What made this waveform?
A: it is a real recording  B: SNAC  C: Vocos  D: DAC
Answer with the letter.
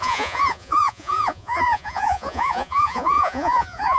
C